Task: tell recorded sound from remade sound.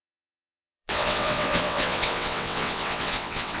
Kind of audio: remade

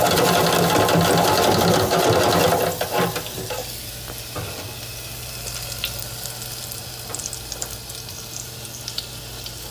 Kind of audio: recorded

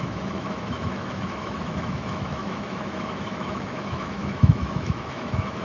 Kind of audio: remade